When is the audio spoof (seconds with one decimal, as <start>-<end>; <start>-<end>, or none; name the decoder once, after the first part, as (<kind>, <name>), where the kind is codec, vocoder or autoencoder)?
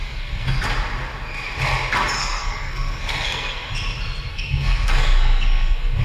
0.0-0.6 (codec, SNAC); 2.2-3.7; 4.3-6.0